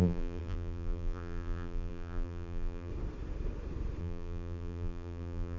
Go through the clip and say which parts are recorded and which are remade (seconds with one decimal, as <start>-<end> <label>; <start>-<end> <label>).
0.0-2.9 remade; 2.9-4.0 recorded; 4.0-5.6 remade